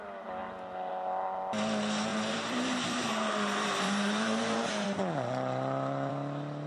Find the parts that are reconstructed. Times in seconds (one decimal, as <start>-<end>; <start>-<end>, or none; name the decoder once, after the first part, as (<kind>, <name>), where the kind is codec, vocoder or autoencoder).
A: 2.1-6.1 (vocoder, BigVGAN v2)

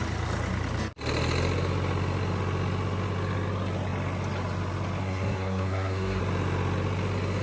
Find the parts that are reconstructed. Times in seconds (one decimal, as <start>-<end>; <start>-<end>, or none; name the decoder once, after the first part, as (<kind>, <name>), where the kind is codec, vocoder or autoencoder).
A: 5.0-6.2 (codec, SNAC)